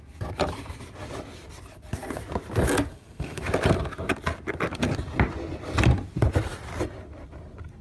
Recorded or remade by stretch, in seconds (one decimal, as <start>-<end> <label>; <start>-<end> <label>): 0.0-2.9 recorded; 2.9-3.4 remade; 3.4-7.8 recorded